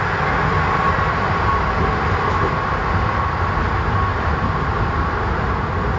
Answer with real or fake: real